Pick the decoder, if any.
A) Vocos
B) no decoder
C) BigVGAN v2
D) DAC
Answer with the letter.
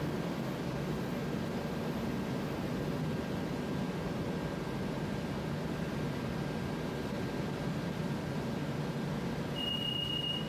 B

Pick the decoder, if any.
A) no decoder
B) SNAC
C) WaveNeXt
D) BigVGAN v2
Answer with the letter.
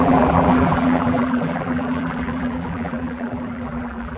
D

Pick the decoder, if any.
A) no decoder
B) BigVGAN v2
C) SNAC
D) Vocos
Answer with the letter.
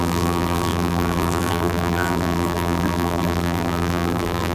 B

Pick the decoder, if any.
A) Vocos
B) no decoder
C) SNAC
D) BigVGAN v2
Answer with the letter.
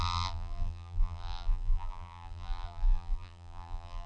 D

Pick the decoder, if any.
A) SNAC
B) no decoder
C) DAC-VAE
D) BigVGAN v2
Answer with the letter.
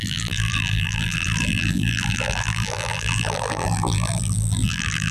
D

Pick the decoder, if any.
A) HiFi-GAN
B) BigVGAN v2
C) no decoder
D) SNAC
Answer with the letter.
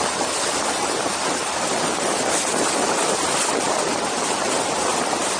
B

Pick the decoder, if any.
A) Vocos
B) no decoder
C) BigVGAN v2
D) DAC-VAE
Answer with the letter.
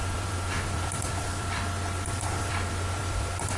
C